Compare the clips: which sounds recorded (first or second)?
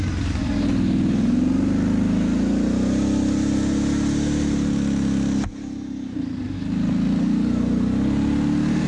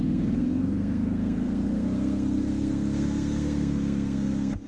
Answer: first